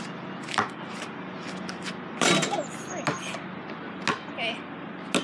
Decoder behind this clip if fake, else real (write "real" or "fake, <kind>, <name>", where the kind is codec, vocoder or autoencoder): real